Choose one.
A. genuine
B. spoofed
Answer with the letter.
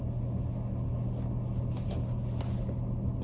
A